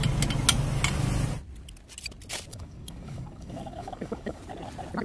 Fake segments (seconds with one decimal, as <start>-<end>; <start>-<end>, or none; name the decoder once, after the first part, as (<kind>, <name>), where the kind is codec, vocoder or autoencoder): 2.5-4.4 (codec, DAC)